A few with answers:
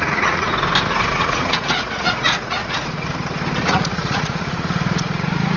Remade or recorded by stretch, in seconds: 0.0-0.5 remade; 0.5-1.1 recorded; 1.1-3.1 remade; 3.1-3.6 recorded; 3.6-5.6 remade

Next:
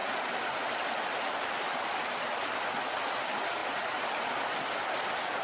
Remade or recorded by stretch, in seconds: 0.0-5.4 recorded

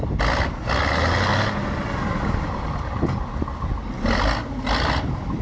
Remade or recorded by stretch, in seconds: 0.0-5.4 recorded

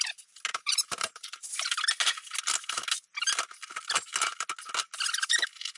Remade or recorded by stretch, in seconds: 0.0-0.5 recorded; 0.5-1.5 remade; 1.5-5.8 recorded

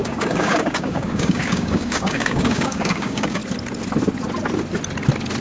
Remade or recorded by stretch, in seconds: 0.0-3.4 remade; 3.4-5.4 recorded